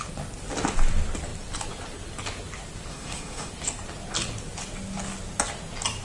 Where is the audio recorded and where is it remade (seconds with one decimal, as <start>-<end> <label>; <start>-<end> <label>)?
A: 0.0-2.9 recorded; 2.9-3.5 remade; 3.5-6.0 recorded